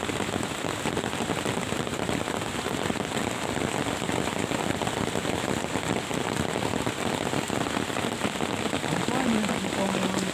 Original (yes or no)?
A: yes